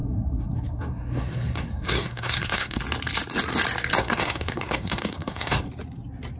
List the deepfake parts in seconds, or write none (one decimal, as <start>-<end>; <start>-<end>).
0.0-2.8; 4.0-5.7